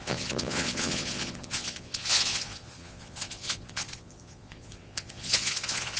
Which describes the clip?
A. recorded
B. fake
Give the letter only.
B